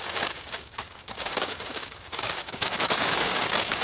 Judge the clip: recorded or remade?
remade